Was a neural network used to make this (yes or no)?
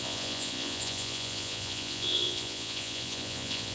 yes